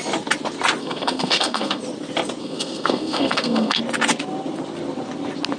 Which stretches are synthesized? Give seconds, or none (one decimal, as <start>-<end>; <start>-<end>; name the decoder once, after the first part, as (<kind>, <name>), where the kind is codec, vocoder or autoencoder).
0.8-1.8 (codec, SNAC); 2.4-3.8